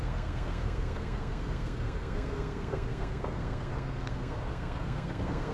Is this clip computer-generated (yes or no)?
yes